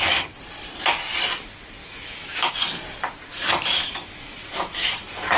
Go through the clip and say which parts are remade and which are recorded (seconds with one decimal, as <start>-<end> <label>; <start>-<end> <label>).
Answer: 0.0-1.8 recorded; 1.8-2.5 remade; 2.5-3.3 recorded; 3.3-5.4 remade